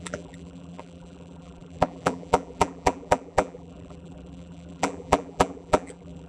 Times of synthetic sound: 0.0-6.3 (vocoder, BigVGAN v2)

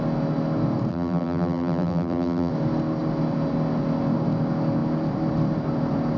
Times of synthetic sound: 0.9-2.5 (vocoder, BigVGAN v2)

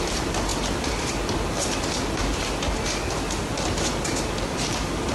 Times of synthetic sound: none

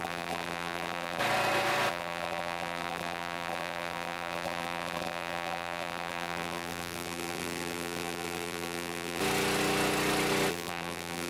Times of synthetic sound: 0.0-1.2 (vocoder, BigVGAN v2); 1.9-9.2; 10.5-11.3

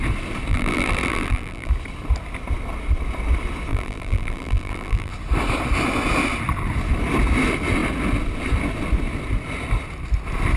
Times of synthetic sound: 0.5-1.7 (vocoder, BigVGAN v2); 3.7-5.1

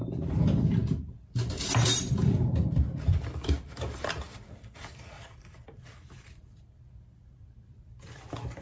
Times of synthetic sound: 0.0-0.8 (vocoder, BigVGAN v2); 1.6-8.6